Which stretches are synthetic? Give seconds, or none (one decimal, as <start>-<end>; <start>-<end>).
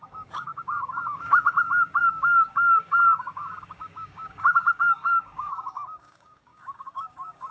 0.0-7.5